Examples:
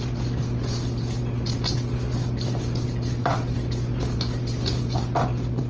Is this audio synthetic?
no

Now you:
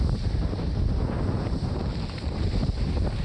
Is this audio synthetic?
no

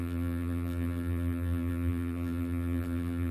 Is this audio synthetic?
yes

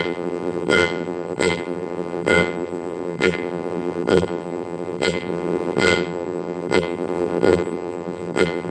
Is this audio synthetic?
yes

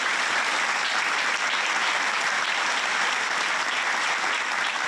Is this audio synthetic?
no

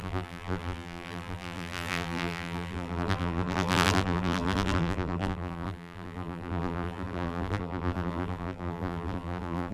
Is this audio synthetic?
yes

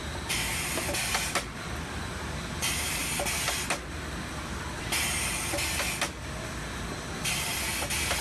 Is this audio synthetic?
yes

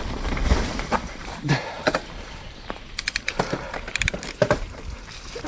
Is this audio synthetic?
yes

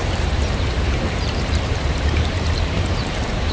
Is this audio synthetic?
yes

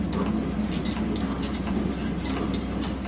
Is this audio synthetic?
no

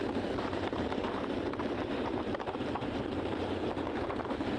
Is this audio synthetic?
yes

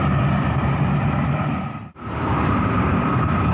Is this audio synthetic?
yes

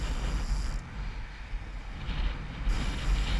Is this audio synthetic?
no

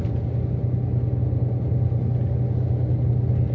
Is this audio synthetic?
no